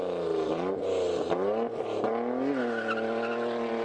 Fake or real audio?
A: real